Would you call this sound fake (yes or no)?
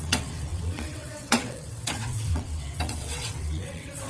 yes